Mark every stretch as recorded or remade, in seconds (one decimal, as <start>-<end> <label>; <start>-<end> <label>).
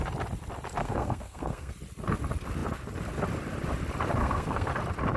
0.0-0.8 recorded; 0.8-1.7 remade; 1.7-4.2 recorded; 4.2-4.7 remade; 4.7-5.2 recorded